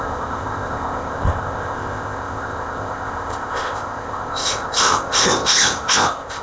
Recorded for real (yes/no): no